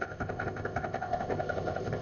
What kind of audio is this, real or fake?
fake